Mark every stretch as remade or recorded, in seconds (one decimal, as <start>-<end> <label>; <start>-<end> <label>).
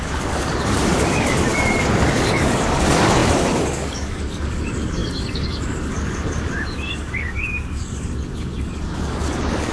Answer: 0.0-9.7 remade